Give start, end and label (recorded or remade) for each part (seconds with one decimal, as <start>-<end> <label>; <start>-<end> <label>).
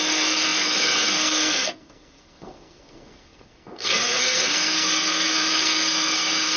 0.0-6.6 remade